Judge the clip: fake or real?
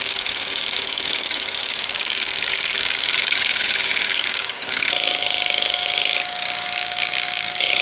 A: fake